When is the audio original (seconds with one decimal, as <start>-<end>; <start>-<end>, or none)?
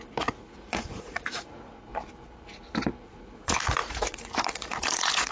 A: 1.9-3.0